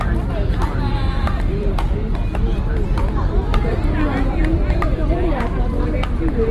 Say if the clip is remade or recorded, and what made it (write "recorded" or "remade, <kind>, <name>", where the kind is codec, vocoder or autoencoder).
recorded